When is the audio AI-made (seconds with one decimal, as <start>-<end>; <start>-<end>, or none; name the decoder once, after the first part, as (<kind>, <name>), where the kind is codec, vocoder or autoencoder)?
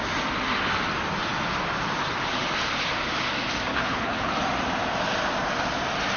3.7-4.3 (codec, HILCodec)